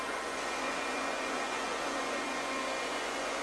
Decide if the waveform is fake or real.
fake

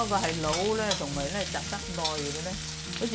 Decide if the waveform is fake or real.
real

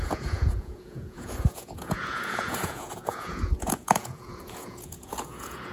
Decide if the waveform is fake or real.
fake